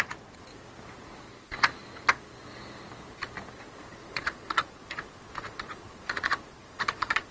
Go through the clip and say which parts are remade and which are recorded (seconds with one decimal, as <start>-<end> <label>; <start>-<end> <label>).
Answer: 0.0-0.5 remade; 0.5-3.8 recorded; 3.8-7.3 remade